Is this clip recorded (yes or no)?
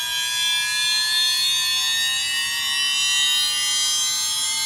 yes